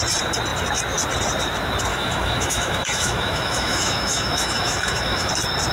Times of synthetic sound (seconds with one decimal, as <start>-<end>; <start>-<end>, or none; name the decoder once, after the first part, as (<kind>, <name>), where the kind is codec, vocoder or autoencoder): 1.9-5.3 (autoencoder, DAC-VAE)